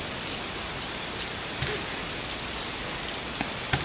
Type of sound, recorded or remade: recorded